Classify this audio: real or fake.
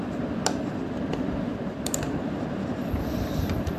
fake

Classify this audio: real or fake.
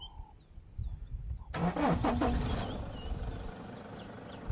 real